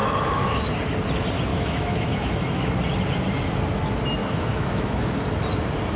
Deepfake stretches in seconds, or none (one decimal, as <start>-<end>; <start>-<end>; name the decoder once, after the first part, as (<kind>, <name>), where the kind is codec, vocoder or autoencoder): 0.0-0.7 (autoencoder, DAC-VAE); 1.5-2.6; 4.2-5.1